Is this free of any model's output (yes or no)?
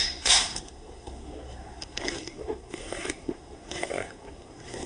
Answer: no